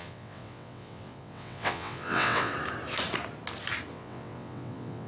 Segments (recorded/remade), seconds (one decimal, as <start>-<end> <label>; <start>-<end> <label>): 0.0-2.5 remade; 2.5-3.9 recorded; 3.9-5.1 remade